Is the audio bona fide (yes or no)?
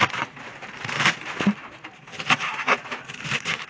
yes